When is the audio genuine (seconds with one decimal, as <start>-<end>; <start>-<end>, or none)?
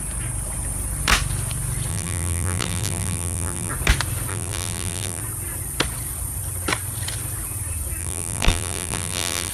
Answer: 0.0-1.9; 3.7-4.3; 5.2-8.0